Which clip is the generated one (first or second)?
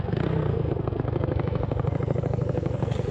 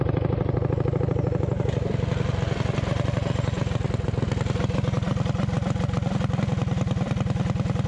first